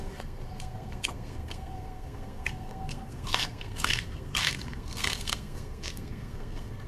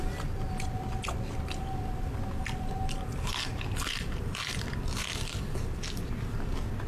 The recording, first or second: second